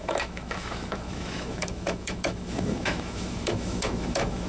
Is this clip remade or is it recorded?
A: remade